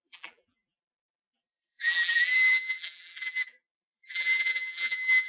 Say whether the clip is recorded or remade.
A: remade